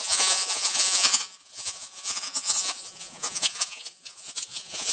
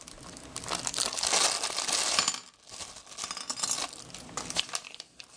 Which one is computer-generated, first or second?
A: first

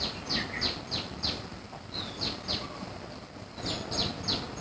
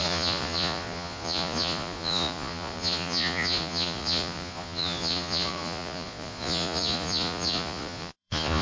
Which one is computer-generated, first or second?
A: second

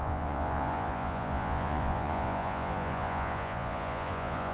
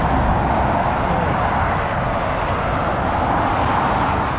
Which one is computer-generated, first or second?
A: first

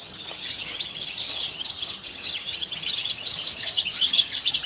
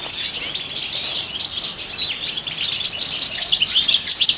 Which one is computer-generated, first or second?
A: first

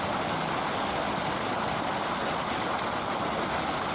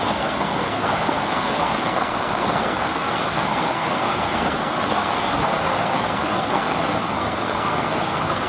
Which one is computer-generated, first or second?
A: second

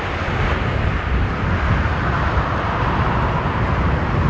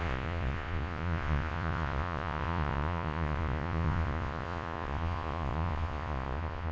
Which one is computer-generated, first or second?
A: second